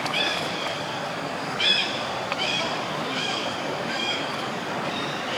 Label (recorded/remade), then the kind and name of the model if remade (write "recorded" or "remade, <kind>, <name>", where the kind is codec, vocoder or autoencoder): remade, codec, DAC